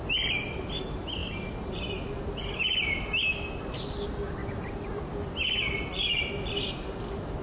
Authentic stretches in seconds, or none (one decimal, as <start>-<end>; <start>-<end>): 0.0-7.4